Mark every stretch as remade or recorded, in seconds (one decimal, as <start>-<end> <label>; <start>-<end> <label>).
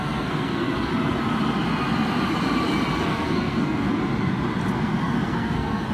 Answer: 0.0-0.9 remade; 0.9-3.0 recorded; 3.0-4.0 remade; 4.0-4.7 recorded; 4.7-5.9 remade